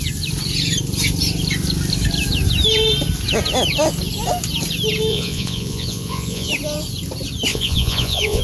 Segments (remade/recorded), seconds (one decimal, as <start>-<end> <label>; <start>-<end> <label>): 0.0-5.1 recorded; 5.1-6.5 remade; 6.5-7.5 recorded; 7.5-8.4 remade